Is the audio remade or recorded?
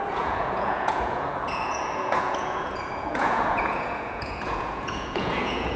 remade